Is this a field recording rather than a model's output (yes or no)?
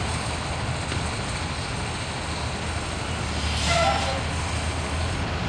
yes